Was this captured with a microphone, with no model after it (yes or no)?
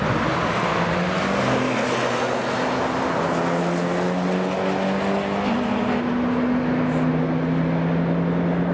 yes